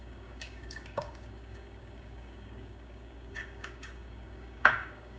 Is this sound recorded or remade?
remade